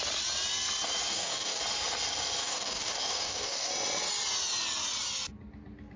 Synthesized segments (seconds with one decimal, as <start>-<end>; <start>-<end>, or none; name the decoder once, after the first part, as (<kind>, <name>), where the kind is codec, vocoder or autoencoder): 1.1-1.6 (codec, DAC); 2.4-3.7